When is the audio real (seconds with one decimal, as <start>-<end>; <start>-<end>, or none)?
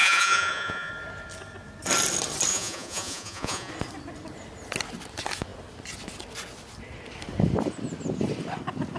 0.9-2.5; 3.7-9.0